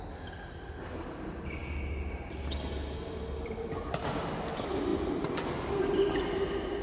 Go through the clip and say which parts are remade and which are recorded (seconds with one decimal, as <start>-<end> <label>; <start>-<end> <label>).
0.0-6.8 recorded